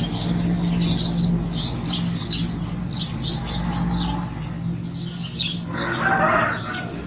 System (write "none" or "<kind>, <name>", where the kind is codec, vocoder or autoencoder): none